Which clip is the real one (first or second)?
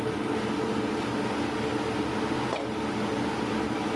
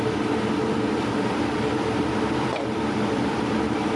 first